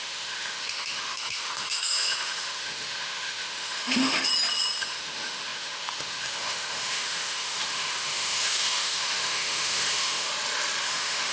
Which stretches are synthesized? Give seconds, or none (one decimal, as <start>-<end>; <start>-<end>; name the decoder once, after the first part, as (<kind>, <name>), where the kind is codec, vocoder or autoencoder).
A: 0.0-4.3 (autoencoder, DAC-VAE); 4.8-10.3; 10.8-11.3